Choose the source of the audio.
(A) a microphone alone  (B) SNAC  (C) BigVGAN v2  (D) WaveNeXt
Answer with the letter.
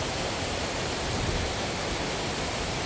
A